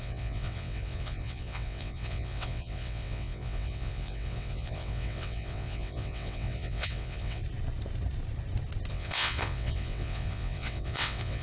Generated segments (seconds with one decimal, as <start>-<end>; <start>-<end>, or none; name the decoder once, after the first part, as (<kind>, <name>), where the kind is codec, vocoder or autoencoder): 0.0-7.4 (vocoder, WaveNeXt); 8.9-11.4